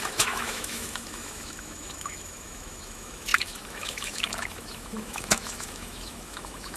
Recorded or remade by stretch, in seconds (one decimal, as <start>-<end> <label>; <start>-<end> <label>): 0.0-6.8 remade